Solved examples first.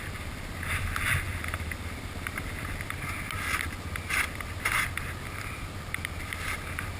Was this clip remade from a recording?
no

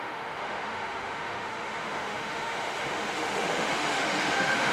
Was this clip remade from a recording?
yes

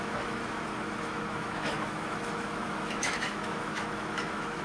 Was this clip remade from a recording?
yes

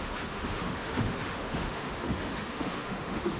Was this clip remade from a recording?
yes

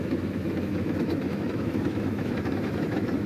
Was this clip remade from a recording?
yes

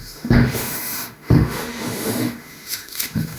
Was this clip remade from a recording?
yes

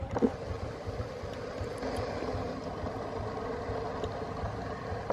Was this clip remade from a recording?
no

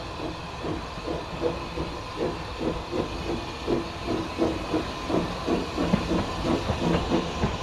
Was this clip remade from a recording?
no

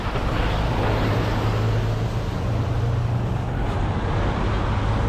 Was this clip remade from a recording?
no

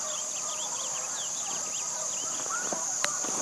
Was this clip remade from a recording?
no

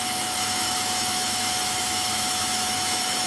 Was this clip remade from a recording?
yes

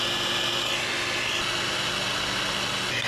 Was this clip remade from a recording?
no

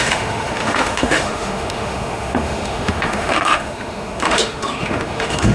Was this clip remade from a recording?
yes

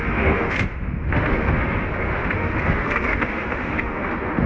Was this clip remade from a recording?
yes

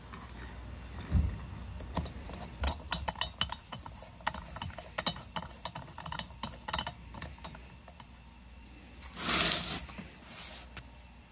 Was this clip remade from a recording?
no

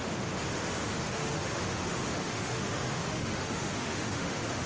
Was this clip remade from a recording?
yes